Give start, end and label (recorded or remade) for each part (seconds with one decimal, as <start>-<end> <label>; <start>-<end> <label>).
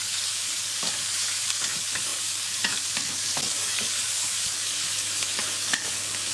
0.0-6.3 remade